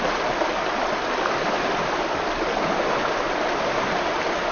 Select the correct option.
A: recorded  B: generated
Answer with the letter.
A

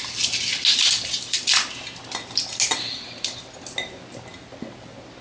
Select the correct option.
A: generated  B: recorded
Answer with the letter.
B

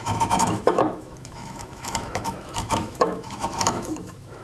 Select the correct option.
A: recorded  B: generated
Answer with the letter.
B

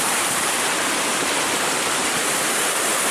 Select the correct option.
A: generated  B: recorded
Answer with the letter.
A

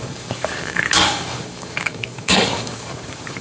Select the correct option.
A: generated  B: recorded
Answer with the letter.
A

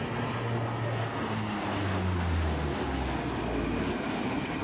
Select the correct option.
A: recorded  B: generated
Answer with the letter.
A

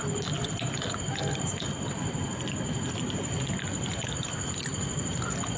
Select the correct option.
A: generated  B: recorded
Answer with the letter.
B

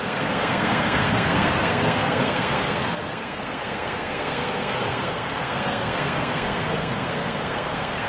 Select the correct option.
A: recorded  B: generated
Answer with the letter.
B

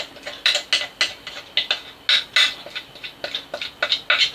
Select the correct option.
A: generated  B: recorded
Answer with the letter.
B